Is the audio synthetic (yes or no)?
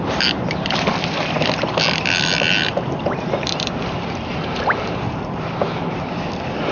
no